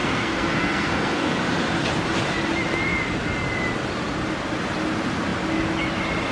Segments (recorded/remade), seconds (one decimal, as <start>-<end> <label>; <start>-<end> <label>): 0.0-1.4 remade; 1.4-6.3 recorded